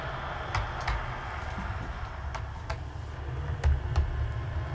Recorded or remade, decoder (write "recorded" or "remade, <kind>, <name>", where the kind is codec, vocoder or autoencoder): recorded